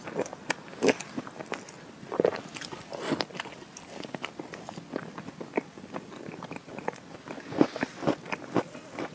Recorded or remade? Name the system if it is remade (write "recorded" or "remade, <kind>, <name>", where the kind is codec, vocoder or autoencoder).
recorded